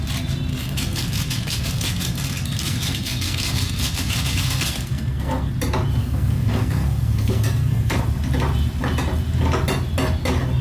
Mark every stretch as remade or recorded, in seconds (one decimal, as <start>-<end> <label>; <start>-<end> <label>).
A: 0.0-0.5 recorded; 0.5-5.5 remade; 5.5-6.0 recorded; 6.0-8.0 remade; 8.0-10.6 recorded